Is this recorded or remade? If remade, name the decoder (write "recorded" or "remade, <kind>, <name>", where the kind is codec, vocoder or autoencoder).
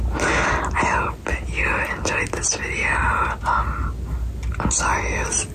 recorded